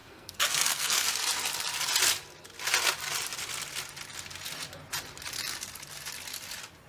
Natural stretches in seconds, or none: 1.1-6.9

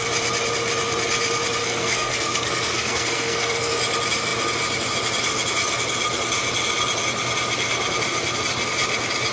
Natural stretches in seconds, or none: 0.0-1.6; 3.8-9.3